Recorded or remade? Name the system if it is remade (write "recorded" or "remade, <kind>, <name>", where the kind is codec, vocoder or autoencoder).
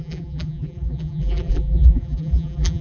remade, vocoder, BigVGAN v2